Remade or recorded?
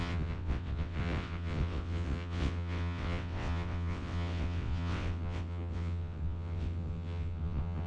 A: remade